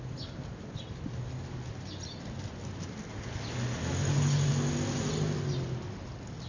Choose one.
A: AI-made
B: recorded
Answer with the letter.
B